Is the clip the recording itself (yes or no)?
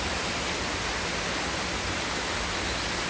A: yes